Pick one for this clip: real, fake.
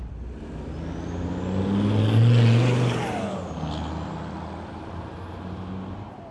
real